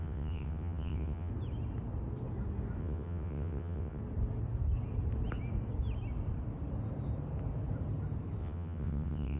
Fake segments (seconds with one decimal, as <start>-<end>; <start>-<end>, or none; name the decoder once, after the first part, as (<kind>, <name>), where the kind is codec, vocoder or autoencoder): 0.0-1.3 (vocoder, WaveNeXt); 2.8-4.0; 8.4-9.4